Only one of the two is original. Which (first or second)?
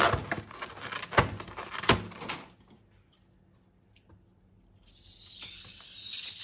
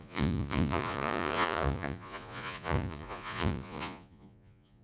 first